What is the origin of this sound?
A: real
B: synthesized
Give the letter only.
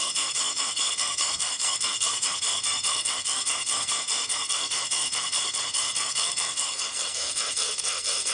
B